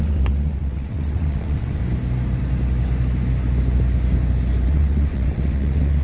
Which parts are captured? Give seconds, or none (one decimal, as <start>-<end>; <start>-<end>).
1.8-4.7